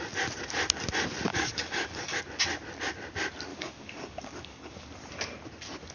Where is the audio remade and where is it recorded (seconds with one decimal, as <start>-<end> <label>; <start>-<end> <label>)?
0.0-1.3 recorded; 1.3-2.2 remade; 2.2-3.5 recorded; 3.5-4.9 remade; 4.9-5.9 recorded